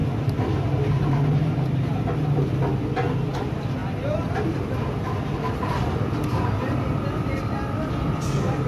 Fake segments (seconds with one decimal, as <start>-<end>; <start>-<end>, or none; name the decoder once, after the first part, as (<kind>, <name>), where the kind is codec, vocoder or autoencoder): none